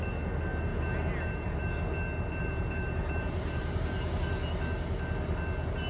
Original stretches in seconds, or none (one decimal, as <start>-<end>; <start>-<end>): 0.0-0.7; 1.8-2.4; 4.2-5.9